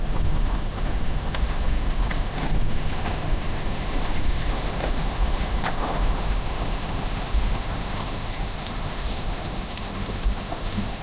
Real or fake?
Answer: fake